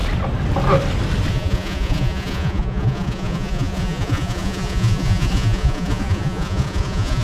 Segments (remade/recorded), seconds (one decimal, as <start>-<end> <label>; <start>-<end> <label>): 0.0-1.3 recorded; 1.3-7.2 remade